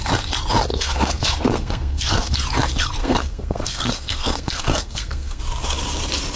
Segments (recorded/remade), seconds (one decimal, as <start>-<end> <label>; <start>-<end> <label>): 0.0-0.7 recorded; 0.7-2.3 remade; 2.3-3.0 recorded; 3.0-5.4 remade; 5.4-6.4 recorded